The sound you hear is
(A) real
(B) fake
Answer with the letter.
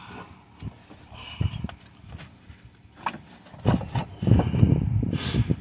A